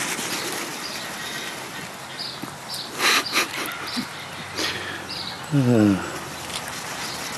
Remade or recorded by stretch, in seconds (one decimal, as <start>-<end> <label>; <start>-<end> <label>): 0.0-7.4 recorded